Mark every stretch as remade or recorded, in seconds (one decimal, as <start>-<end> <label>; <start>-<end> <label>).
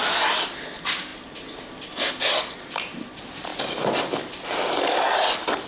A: 0.0-5.7 recorded